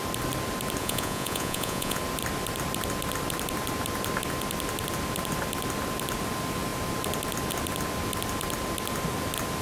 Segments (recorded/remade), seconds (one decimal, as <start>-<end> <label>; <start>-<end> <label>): 0.0-0.8 recorded; 0.8-2.0 remade; 2.0-9.6 recorded